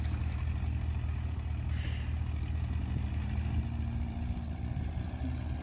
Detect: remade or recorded recorded